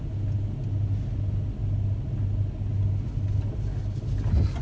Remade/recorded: recorded